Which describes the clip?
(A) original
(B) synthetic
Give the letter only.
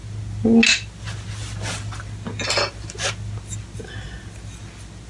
A